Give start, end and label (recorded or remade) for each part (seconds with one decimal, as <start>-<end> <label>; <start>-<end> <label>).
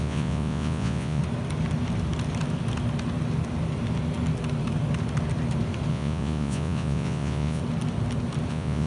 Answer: 0.0-1.2 remade; 1.2-5.9 recorded; 5.9-7.6 remade; 7.6-8.5 recorded; 8.5-8.9 remade